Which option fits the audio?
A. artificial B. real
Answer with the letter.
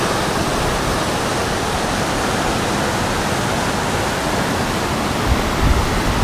B